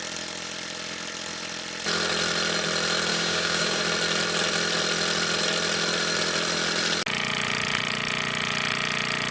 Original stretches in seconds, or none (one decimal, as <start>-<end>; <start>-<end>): 0.0-3.1; 3.8-9.3